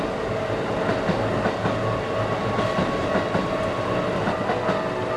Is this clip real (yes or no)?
yes